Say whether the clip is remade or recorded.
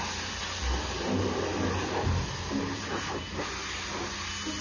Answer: recorded